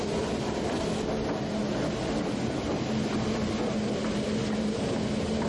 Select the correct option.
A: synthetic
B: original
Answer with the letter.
B